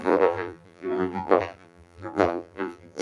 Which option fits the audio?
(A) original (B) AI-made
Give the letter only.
B